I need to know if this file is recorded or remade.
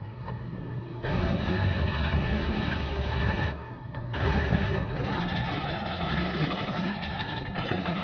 remade